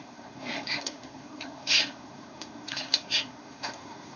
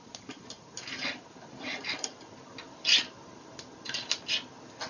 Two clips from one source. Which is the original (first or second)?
second